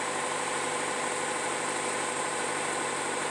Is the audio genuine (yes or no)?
yes